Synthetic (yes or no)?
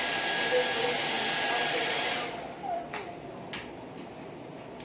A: no